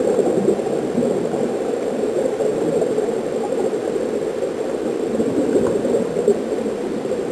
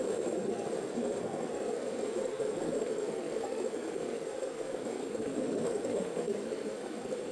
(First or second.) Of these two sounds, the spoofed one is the second